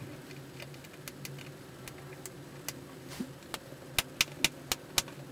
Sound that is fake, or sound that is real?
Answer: real